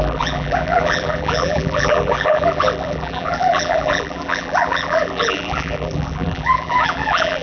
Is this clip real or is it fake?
fake